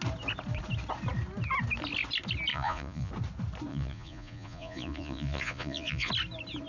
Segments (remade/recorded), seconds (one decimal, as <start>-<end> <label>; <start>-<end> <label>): 0.0-2.5 recorded; 2.5-3.1 remade; 3.1-3.7 recorded; 3.7-6.1 remade; 6.1-6.7 recorded